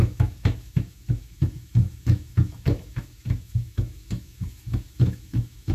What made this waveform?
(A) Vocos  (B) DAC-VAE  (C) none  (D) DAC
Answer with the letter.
B